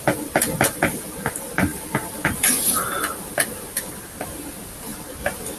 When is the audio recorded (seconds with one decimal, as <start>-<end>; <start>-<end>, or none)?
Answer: 0.0-5.6